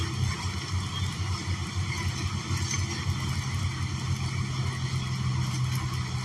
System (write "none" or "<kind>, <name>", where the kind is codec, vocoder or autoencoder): none